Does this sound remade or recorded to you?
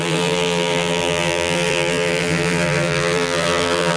remade